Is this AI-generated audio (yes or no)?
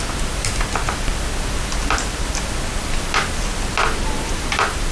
no